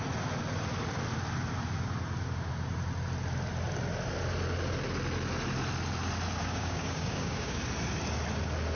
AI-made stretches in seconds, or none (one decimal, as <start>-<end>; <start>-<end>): 6.4-7.6